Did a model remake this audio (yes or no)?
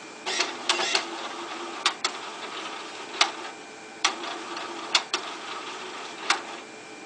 yes